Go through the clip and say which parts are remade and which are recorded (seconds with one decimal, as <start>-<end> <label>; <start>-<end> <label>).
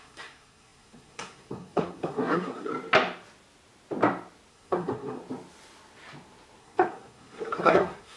0.0-2.7 remade; 2.7-4.5 recorded; 4.5-5.2 remade; 5.2-6.6 recorded; 6.6-8.2 remade